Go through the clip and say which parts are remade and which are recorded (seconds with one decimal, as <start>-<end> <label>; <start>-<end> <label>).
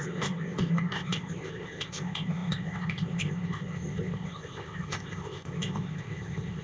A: 0.0-6.6 remade